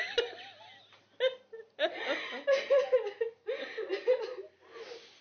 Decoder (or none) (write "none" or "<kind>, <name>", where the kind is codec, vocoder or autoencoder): none